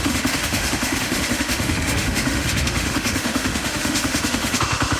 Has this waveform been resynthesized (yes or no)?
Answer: yes